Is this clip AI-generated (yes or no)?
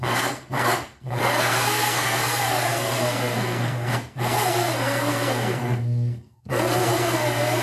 yes